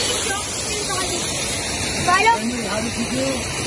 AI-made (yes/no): no